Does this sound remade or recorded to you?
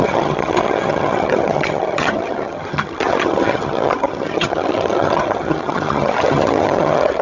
remade